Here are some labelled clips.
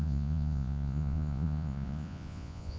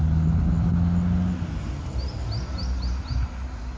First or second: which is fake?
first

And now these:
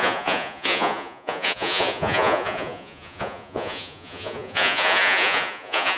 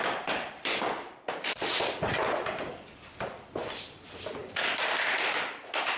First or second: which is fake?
first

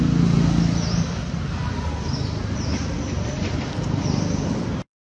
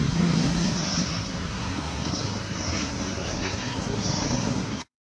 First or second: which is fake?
second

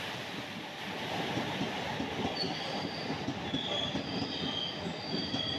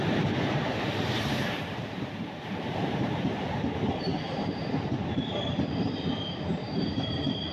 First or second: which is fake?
second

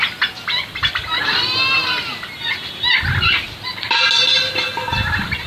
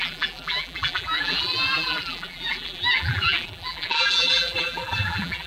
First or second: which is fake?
second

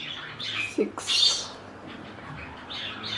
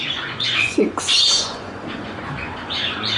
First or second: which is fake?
second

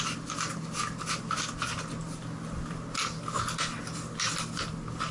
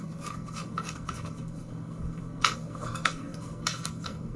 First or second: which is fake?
second